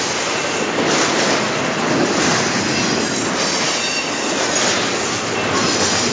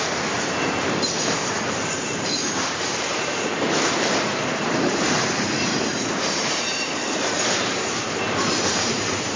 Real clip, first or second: first